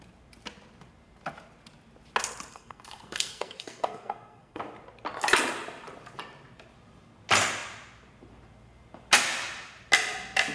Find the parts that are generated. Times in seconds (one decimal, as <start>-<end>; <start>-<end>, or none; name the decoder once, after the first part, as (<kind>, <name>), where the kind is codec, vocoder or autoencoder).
2.5-4.6 (codec, SNAC)